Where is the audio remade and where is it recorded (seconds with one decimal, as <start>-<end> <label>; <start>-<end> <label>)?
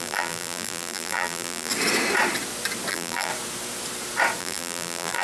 0.0-1.7 remade; 1.7-2.9 recorded; 2.9-3.3 remade; 3.3-4.4 recorded; 4.4-5.2 remade